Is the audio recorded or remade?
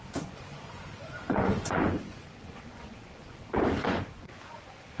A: remade